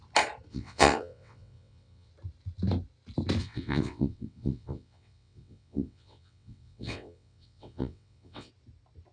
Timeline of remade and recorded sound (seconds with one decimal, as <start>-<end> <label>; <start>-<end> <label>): 0.0-0.5 recorded; 0.5-2.1 remade; 2.1-3.4 recorded; 3.4-8.5 remade; 8.5-9.1 recorded